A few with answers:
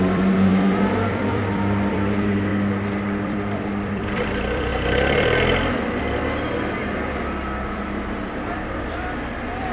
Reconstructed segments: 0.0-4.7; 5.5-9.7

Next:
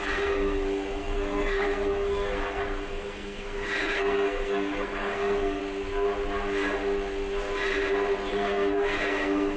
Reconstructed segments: 0.0-5.6; 8.3-9.6

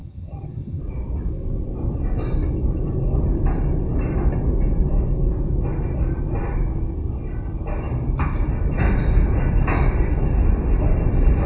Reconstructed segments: 0.0-0.8

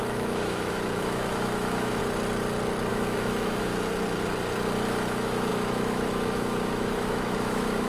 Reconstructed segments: 0.0-2.0; 2.9-3.7; 4.9-7.9

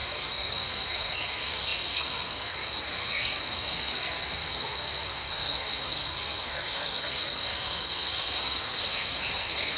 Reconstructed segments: 0.0-9.8

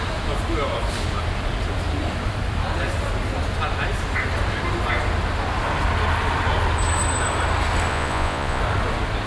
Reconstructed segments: 7.9-8.6

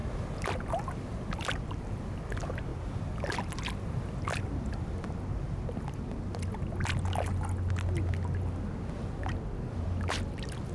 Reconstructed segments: 0.0-0.6; 2.7-3.7; 4.3-6.3